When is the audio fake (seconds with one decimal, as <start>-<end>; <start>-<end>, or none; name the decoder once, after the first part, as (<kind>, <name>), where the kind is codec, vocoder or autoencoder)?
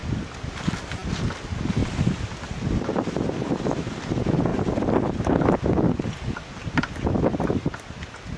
0.0-0.7 (vocoder, BigVGAN v2); 1.8-4.1; 4.5-5.4